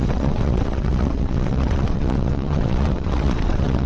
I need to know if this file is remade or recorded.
remade